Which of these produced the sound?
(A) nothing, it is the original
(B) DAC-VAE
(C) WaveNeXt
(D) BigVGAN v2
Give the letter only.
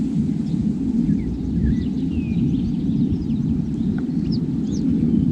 D